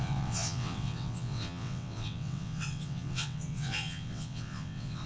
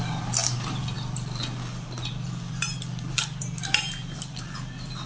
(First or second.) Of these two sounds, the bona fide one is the second